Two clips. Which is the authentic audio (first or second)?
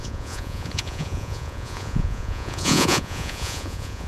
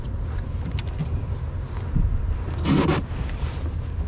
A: second